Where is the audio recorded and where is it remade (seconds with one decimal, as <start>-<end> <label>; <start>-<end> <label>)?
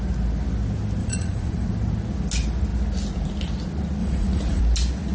0.0-1.0 recorded; 1.0-1.7 remade; 1.7-4.0 recorded; 4.0-4.6 remade; 4.6-5.1 recorded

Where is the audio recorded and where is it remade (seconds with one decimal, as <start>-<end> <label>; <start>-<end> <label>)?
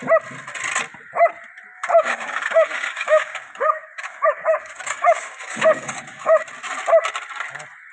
0.0-1.7 recorded; 1.7-6.4 remade; 6.4-7.9 recorded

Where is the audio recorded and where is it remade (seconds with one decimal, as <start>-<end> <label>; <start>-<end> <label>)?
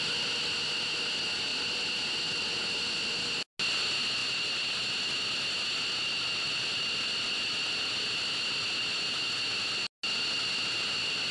0.0-11.3 recorded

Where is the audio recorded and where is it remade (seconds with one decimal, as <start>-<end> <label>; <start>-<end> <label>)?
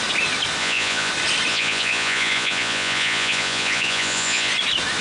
0.0-0.6 recorded; 0.6-1.1 remade; 1.1-1.5 recorded; 1.5-4.5 remade; 4.5-5.0 recorded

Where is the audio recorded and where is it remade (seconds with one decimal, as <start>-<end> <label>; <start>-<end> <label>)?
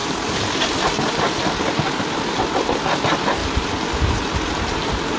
0.0-1.1 remade; 1.1-3.4 recorded; 3.4-5.2 remade